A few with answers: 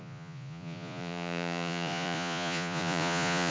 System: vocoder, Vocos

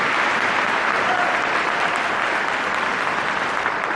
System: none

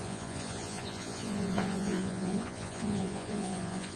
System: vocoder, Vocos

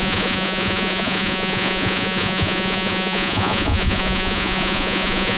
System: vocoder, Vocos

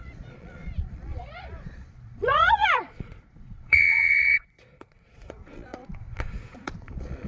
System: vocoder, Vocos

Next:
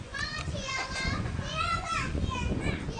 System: vocoder, Vocos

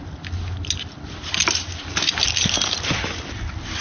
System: none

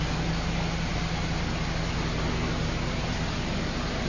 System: none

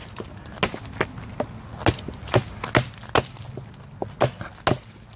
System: none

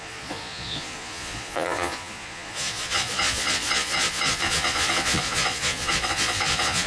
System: vocoder, Vocos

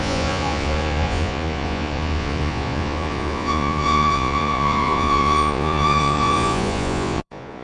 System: vocoder, Vocos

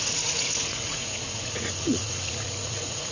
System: vocoder, Vocos